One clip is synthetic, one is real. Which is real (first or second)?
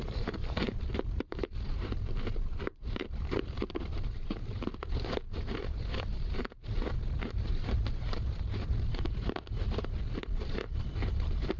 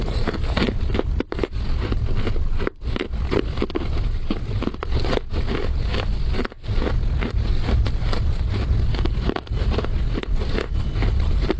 second